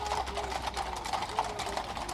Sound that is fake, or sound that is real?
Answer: real